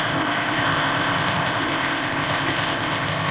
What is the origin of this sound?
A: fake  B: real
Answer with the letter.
A